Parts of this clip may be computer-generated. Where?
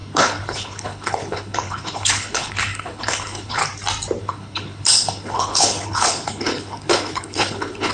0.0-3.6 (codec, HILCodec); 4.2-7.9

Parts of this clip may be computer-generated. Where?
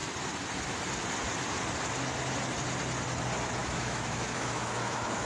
3.6-5.3 (autoencoder, DAC-VAE)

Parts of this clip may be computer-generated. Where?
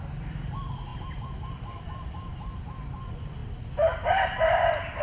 0.9-2.9 (vocoder, BigVGAN v2)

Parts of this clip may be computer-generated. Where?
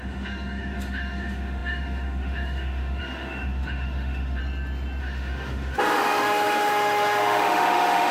0.0-4.4 (autoencoder, DAC-VAE); 5.0-8.1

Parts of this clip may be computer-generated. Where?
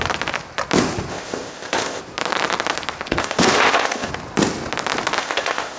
1.1-2.0 (codec, ZipCodec); 3.2-4.1; 5.2-5.8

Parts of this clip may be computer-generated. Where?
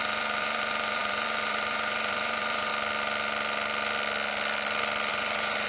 0.0-2.7 (vocoder, BigVGAN v2); 5.1-5.7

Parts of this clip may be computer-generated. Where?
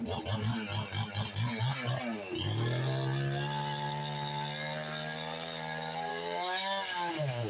6.1-7.1 (codec, DAC)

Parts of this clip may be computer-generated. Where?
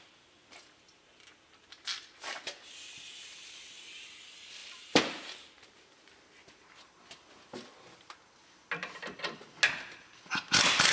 4.6-6.0 (vocoder, BigVGAN v2)